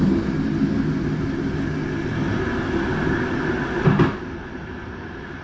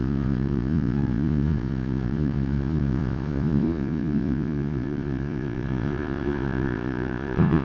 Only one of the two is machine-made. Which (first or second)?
second